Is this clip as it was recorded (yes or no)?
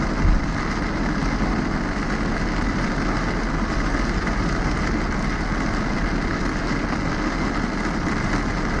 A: yes